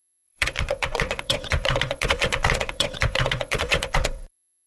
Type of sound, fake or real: fake